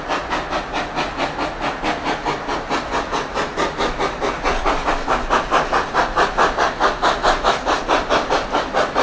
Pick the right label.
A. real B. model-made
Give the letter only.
A